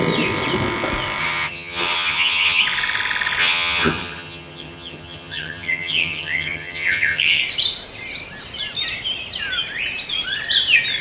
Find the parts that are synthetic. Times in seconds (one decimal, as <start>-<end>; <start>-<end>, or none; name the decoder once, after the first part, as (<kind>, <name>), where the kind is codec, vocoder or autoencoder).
1.2-2.6 (vocoder, HiFi-GAN); 3.4-7.4